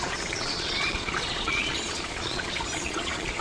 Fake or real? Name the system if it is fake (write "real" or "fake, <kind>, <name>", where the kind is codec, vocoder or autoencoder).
fake, vocoder, Vocos